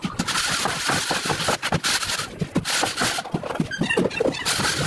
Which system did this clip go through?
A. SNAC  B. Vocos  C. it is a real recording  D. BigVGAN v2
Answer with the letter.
C